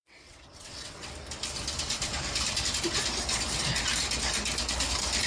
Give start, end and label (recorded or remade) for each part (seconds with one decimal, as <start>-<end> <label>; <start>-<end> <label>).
0.0-1.1 remade; 1.1-5.3 recorded